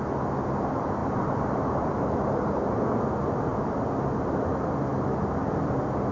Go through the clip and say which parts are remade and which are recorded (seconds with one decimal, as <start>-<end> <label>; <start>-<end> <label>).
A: 0.0-1.0 recorded; 1.0-2.4 remade; 2.4-3.5 recorded; 3.5-4.2 remade; 4.2-6.1 recorded